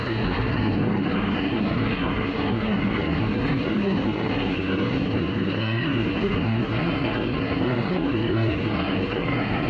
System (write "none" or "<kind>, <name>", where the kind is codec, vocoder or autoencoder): codec, SNAC